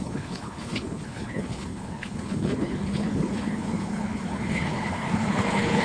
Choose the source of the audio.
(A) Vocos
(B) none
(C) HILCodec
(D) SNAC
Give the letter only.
C